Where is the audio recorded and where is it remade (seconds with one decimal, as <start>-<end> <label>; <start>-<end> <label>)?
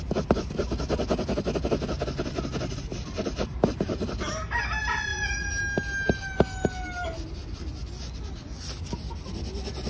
0.0-5.1 recorded; 5.1-5.6 remade; 5.6-9.9 recorded